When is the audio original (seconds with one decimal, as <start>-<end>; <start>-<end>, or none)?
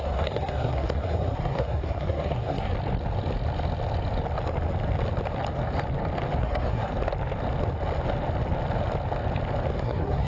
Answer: 2.7-6.4; 6.9-9.8